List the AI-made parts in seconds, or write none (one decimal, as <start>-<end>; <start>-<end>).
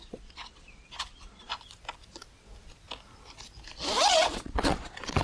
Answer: 0.0-1.5; 4.1-5.2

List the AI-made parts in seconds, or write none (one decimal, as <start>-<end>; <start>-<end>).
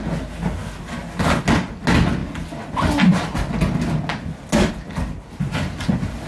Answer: none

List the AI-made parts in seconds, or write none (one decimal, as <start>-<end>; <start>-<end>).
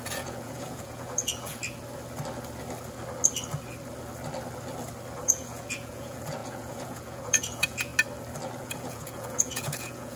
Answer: 0.0-1.6; 5.2-7.9; 8.6-10.2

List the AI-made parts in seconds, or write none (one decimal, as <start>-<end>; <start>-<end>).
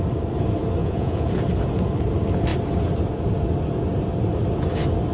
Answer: 0.8-1.3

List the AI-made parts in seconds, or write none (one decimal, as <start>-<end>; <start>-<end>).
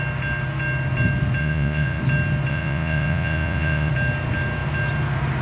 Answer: 1.4-2.0; 2.5-3.9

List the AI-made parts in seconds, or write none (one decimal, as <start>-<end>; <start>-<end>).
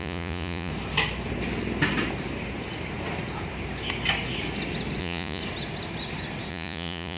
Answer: 0.0-0.7; 5.0-5.4; 6.5-7.2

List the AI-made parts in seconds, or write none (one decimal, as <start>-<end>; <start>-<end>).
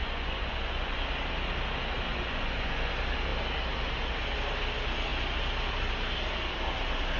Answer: 0.0-1.0; 2.1-2.9